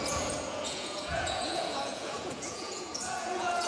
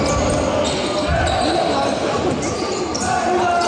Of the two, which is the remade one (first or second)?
first